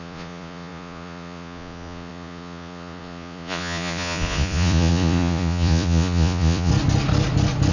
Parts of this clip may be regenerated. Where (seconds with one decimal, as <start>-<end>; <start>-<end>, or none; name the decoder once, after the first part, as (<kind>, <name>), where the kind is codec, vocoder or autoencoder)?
0.0-6.7 (vocoder, Vocos)